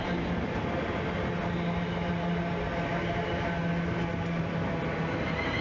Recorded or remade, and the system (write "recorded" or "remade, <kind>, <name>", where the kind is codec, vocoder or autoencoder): recorded